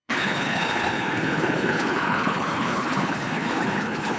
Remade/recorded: remade